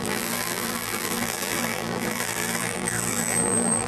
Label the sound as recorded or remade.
remade